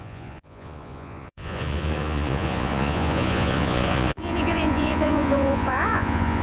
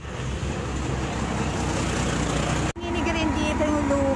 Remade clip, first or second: first